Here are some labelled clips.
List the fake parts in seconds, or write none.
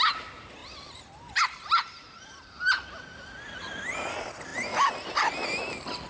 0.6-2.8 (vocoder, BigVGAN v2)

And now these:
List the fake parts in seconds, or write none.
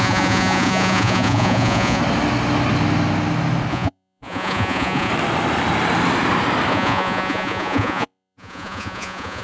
0.0-2.0 (vocoder, Vocos); 3.7-5.1; 6.7-9.4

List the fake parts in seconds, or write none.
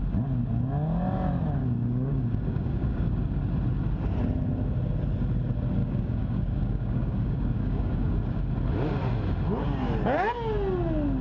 1.6-3.1 (codec, DAC); 5.8-8.5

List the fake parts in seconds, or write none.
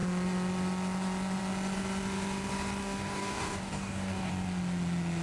2.8-4.3 (codec, DAC)